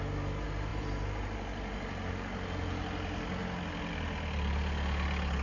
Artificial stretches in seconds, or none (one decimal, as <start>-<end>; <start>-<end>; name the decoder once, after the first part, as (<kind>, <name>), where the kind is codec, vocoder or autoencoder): none